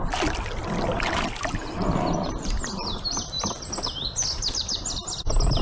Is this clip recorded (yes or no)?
yes